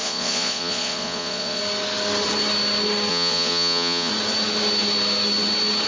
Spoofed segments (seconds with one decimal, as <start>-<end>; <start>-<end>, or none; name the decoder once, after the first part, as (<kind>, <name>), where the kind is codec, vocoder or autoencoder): 0.0-1.6 (vocoder, Vocos); 3.1-4.1